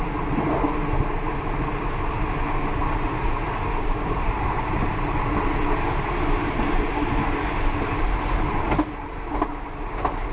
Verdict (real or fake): real